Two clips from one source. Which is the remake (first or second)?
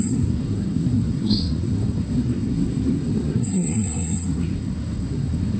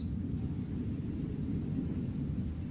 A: first